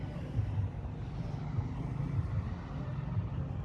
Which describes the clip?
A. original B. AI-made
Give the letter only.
A